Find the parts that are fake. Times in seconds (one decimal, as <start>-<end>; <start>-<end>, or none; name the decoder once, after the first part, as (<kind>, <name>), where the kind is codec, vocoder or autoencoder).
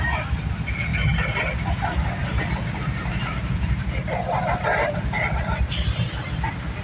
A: none